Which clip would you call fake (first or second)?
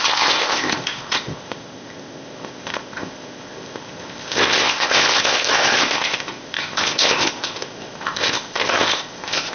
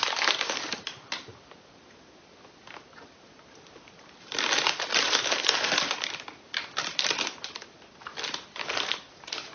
first